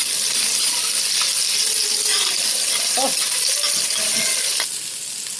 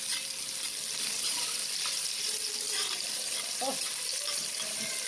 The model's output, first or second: second